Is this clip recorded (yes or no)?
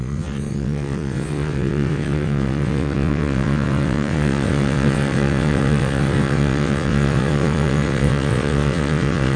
no